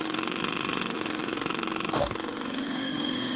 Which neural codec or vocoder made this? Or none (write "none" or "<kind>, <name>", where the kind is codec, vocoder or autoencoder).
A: autoencoder, DAC-VAE